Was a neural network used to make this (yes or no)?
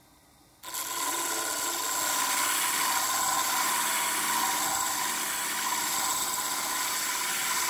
no